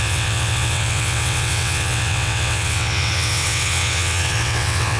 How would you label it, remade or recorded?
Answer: remade